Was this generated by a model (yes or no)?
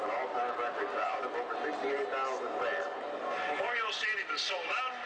no